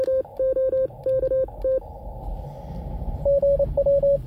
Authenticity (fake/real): real